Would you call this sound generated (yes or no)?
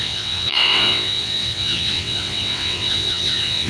yes